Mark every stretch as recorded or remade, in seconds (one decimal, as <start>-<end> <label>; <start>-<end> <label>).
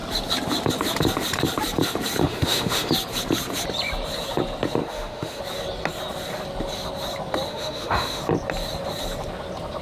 0.0-2.2 recorded; 2.2-2.9 remade; 2.9-4.8 recorded; 4.8-5.4 remade; 5.4-7.5 recorded; 7.5-8.2 remade; 8.2-9.8 recorded